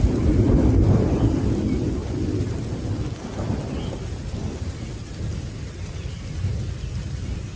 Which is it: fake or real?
real